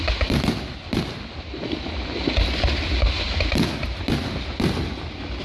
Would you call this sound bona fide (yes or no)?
yes